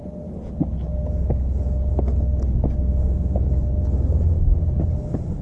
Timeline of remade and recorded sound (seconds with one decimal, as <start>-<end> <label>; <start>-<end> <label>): 0.0-5.4 recorded